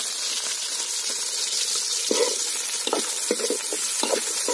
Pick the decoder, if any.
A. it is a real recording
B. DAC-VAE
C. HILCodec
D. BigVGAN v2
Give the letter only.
A